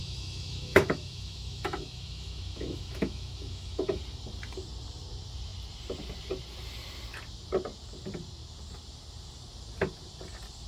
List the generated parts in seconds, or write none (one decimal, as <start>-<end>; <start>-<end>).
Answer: 0.0-4.0